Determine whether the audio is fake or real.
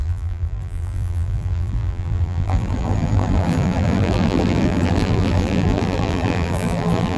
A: fake